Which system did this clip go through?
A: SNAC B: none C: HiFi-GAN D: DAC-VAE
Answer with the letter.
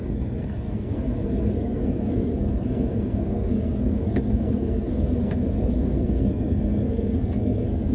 A